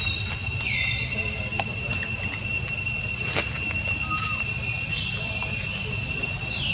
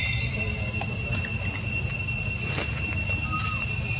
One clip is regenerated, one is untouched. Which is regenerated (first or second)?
first